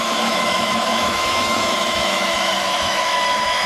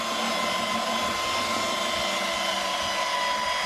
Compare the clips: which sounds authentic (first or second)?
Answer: second